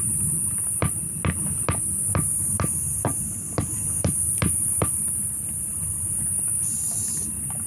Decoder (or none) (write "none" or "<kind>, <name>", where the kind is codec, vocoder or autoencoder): none